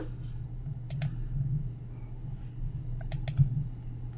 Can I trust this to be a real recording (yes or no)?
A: yes